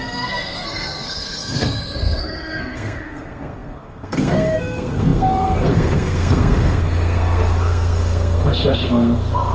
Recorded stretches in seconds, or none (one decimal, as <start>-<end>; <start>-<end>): none